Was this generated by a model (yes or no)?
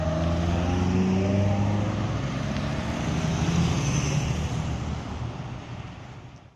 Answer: no